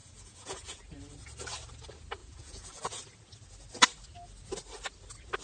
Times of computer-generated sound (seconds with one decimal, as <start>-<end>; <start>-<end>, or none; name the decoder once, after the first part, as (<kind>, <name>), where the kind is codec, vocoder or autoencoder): 0.0-0.8 (vocoder, Vocos); 2.2-3.0